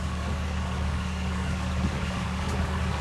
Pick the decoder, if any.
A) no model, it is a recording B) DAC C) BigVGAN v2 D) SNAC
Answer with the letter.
B